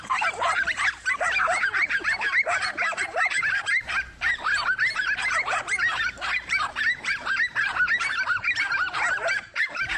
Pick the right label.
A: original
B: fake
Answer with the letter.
B